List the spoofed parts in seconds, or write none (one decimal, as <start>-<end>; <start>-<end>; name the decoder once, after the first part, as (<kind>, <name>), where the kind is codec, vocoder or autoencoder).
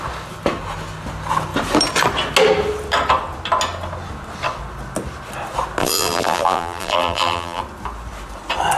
5.8-7.6 (vocoder, BigVGAN v2)